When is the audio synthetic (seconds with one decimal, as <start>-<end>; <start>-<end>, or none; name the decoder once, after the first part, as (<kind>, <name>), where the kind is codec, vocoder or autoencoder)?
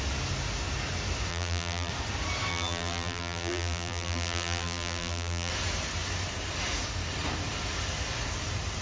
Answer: 1.3-1.9 (vocoder, BigVGAN v2); 2.5-5.5